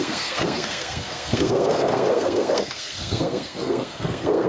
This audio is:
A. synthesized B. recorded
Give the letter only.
A